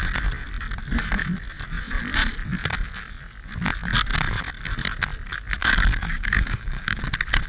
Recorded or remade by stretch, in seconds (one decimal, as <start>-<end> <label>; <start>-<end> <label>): 0.0-5.6 recorded; 5.6-7.0 remade; 7.0-7.5 recorded